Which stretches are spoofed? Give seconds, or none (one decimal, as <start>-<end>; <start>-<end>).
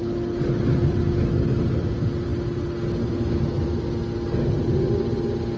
none